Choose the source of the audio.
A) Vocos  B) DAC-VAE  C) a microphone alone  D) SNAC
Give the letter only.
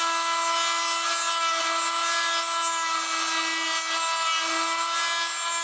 C